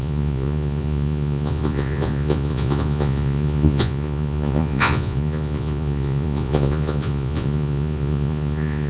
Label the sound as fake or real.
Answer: fake